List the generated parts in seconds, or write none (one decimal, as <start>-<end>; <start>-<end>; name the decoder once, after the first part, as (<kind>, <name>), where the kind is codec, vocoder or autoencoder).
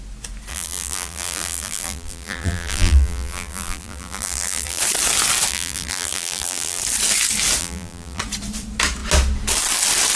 0.5-4.8 (vocoder, BigVGAN v2); 5.5-6.8; 7.6-8.2